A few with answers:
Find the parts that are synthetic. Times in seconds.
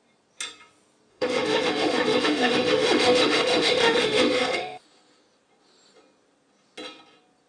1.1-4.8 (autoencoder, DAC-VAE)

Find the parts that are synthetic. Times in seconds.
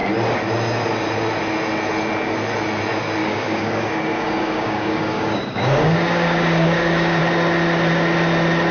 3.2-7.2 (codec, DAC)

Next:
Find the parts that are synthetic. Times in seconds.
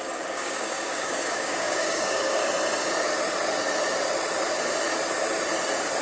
0.0-2.4 (codec, DAC)